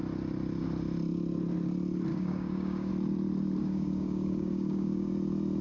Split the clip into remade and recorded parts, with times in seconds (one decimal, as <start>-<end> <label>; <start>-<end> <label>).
0.0-2.1 recorded; 2.1-2.9 remade; 2.9-3.6 recorded; 3.6-5.1 remade; 5.1-5.6 recorded

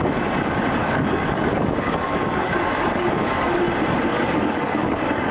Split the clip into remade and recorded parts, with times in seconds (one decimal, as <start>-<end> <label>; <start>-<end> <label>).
0.0-0.8 recorded; 0.8-3.6 remade; 3.6-4.1 recorded; 4.1-5.3 remade

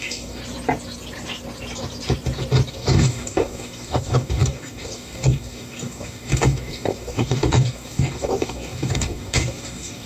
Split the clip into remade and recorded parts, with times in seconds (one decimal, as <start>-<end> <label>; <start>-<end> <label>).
0.0-0.4 remade; 0.4-2.7 recorded; 2.7-10.1 remade

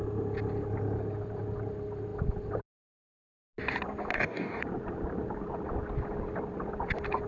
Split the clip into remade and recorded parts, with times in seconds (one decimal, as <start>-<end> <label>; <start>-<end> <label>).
0.0-4.1 recorded; 4.1-4.6 remade; 4.6-7.3 recorded

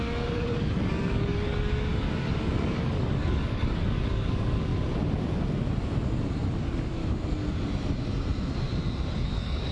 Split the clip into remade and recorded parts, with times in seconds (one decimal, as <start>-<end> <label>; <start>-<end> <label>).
0.0-4.7 remade; 4.7-6.6 recorded; 6.6-7.0 remade; 7.0-9.1 recorded; 9.1-9.7 remade

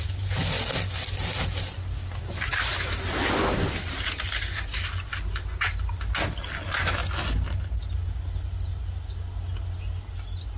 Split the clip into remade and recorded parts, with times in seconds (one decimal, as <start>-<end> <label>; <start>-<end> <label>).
0.0-10.6 recorded

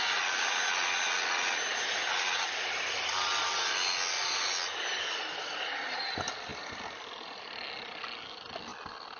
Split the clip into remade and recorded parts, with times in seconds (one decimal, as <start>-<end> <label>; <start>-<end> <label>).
0.0-9.2 recorded

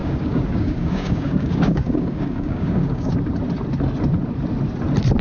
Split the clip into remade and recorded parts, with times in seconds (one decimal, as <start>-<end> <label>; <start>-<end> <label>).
0.0-3.1 remade; 3.1-5.2 recorded